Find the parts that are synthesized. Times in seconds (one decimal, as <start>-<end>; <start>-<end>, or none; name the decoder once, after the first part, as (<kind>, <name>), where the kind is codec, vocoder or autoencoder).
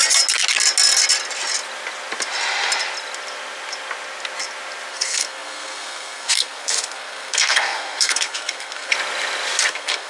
4.9-8.9 (codec, SNAC); 9.7-10.1